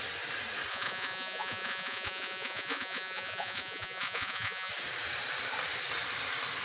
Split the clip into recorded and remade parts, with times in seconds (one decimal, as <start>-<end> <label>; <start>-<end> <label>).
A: 0.0-0.7 recorded; 0.7-4.7 remade; 4.7-6.6 recorded